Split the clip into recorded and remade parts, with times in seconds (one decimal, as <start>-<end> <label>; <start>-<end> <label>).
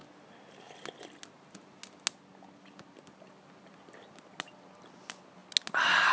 0.0-6.1 recorded